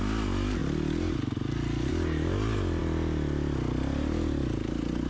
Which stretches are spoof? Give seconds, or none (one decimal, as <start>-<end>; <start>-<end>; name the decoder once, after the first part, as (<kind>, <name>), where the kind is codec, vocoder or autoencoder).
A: none